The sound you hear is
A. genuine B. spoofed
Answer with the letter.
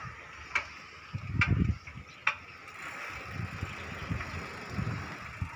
A